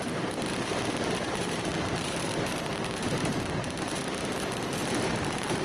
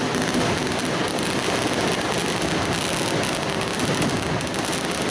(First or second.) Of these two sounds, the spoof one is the first